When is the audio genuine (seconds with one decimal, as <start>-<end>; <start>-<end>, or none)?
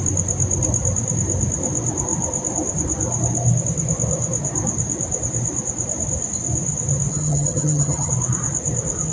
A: 0.0-7.1; 8.1-9.1